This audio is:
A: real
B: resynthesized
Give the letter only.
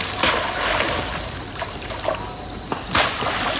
A